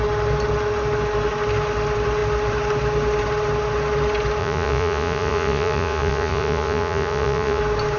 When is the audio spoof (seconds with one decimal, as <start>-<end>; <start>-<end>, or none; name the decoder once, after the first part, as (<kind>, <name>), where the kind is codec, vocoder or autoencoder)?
4.4-7.6 (vocoder, Vocos)